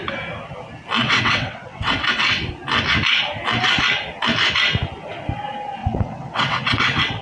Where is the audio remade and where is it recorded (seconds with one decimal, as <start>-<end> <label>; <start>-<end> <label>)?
0.0-1.0 recorded; 1.0-2.5 remade; 2.5-5.8 recorded; 5.8-7.2 remade